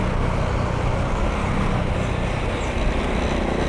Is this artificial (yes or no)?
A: no